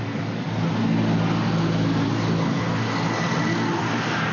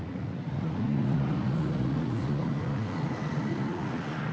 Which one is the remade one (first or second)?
second